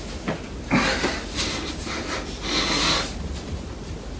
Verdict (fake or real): real